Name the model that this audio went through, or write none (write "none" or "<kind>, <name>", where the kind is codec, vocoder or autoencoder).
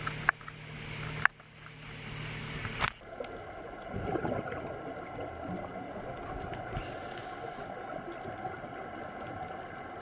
none